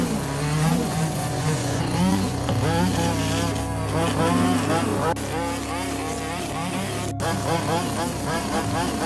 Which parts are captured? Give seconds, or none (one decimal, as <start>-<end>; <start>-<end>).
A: 0.0-0.7; 2.5-9.1